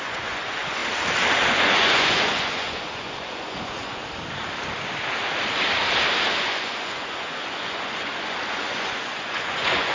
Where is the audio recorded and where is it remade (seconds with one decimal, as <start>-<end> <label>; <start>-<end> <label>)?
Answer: 0.0-0.8 remade; 0.8-1.3 recorded; 1.3-4.0 remade; 4.0-6.4 recorded; 6.4-9.9 remade